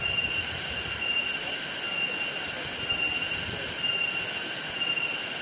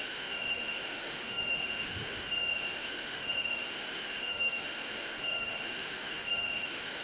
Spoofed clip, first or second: second